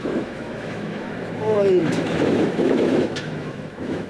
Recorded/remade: remade